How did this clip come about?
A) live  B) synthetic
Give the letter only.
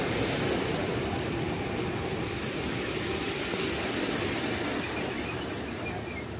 A